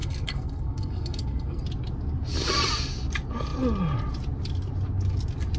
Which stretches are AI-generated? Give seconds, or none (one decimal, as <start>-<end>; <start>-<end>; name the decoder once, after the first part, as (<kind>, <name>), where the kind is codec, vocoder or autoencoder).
0.0-1.6 (codec, SNAC)